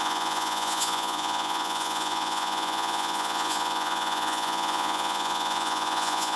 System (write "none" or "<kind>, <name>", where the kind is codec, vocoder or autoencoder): vocoder, Vocos